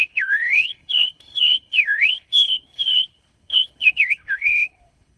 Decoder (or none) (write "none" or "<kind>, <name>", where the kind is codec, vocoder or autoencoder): codec, HILCodec